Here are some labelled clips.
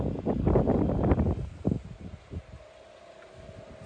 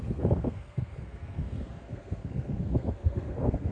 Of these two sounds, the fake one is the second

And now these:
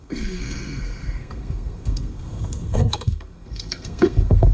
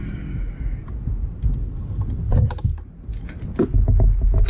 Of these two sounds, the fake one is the first